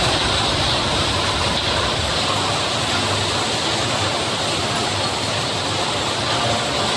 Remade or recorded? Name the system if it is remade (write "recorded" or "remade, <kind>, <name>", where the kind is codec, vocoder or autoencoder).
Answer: recorded